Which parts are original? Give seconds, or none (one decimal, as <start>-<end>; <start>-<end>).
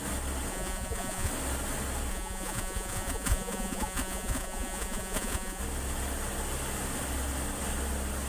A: 0.0-0.5; 1.3-2.1; 5.6-8.3